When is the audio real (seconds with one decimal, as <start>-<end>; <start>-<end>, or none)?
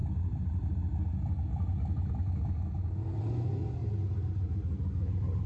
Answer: 0.0-3.3; 3.8-5.5